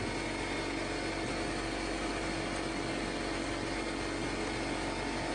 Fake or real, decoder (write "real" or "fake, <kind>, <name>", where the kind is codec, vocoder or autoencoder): real